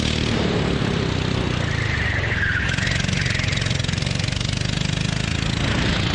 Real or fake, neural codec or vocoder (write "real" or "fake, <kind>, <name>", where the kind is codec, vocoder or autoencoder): real